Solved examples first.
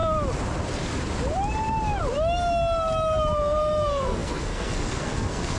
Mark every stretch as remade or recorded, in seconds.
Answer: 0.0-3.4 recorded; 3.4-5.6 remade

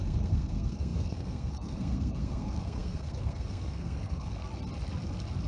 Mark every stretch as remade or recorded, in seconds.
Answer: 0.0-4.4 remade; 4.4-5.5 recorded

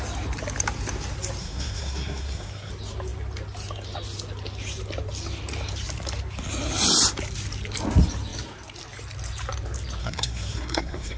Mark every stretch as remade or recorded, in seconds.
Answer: 0.0-1.4 recorded; 1.4-2.7 remade; 2.7-10.0 recorded; 10.0-11.2 remade

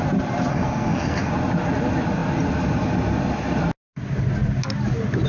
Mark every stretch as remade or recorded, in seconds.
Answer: 0.0-0.5 recorded; 0.5-1.3 remade; 1.3-5.3 recorded

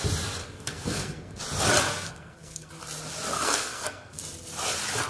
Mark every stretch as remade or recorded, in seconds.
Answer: 0.0-0.4 recorded; 0.4-1.4 remade; 1.4-1.9 recorded; 1.9-2.7 remade; 2.7-3.3 recorded; 3.3-4.2 remade; 4.2-5.1 recorded